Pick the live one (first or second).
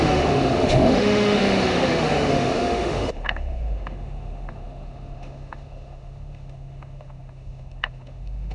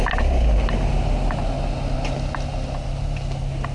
second